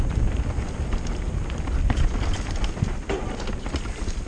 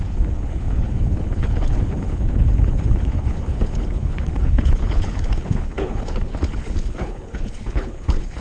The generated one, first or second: second